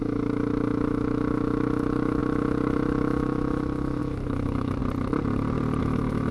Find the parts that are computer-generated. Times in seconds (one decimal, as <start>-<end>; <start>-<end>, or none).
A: 0.0-4.8; 5.8-6.3